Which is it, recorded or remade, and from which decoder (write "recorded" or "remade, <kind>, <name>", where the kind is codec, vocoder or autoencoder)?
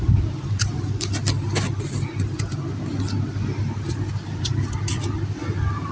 recorded